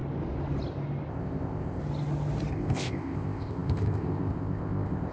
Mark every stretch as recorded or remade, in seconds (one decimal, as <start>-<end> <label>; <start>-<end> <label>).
0.0-1.1 recorded; 1.1-1.8 remade; 1.8-2.5 recorded; 2.5-5.1 remade